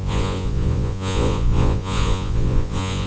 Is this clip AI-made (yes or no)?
yes